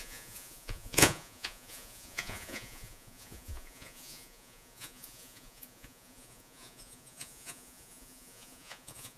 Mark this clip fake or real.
fake